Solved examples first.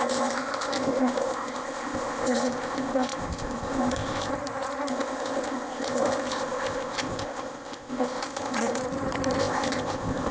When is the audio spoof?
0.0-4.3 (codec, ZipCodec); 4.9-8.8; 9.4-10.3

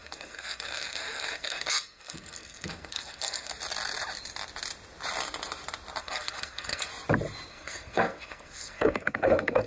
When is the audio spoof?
0.0-3.5 (codec, SNAC); 6.0-6.9; 7.5-9.7

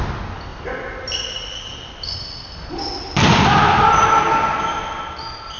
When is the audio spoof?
none